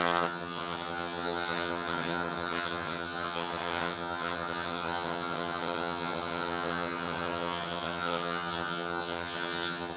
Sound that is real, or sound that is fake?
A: fake